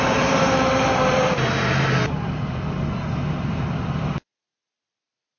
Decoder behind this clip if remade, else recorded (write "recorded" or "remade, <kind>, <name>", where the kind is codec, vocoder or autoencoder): remade, vocoder, BigVGAN v2